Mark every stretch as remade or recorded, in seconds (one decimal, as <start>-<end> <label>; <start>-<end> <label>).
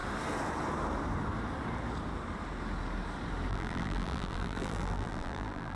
0.0-3.5 recorded; 3.5-5.8 remade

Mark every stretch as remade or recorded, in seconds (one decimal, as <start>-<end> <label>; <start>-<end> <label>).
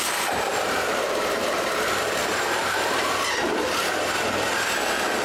0.0-5.2 remade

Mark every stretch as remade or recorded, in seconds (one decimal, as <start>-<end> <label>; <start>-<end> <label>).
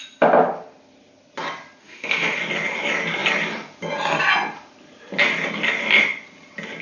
0.0-1.8 recorded; 1.8-2.4 remade; 2.4-6.8 recorded